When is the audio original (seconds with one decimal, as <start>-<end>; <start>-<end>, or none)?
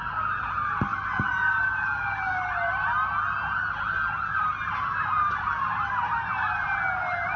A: 0.9-4.4